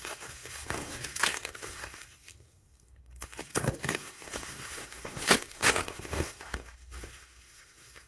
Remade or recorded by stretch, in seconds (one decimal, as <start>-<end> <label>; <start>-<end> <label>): 0.0-8.1 remade